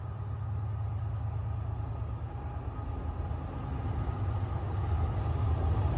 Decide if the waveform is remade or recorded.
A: recorded